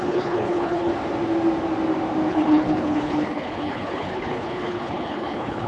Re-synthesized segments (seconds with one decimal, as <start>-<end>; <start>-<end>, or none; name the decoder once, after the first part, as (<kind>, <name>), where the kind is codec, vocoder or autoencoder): 0.0-0.9 (codec, HILCodec); 2.3-5.7